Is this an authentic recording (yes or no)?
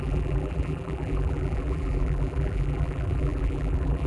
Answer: no